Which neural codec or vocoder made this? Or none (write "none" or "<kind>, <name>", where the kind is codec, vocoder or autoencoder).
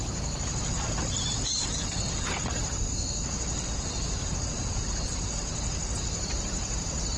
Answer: vocoder, BigVGAN v2